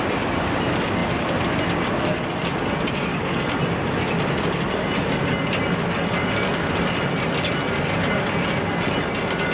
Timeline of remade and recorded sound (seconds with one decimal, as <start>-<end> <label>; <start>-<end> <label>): 0.0-9.5 recorded